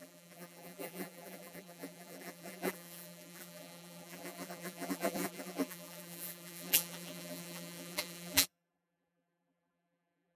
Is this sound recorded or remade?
remade